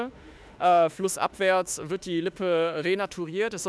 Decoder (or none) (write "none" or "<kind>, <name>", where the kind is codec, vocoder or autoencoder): autoencoder, DAC-VAE